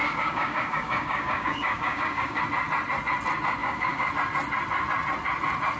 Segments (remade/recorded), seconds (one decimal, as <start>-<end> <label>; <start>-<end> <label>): 0.0-2.4 remade; 2.4-3.6 recorded; 3.6-4.1 remade; 4.1-5.8 recorded